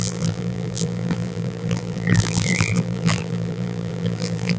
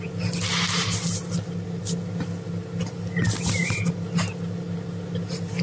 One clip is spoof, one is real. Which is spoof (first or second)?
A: first